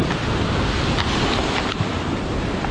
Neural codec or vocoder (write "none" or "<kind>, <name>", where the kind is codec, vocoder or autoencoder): none